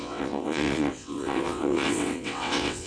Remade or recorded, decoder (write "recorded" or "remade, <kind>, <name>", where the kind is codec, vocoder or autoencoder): remade, vocoder, WaveNeXt